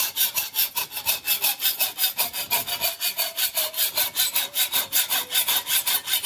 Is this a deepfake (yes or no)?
no